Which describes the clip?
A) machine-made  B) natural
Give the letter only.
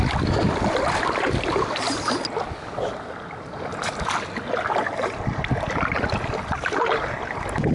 B